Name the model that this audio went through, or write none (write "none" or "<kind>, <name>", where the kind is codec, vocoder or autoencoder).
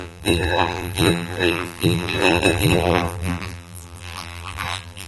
vocoder, BigVGAN v2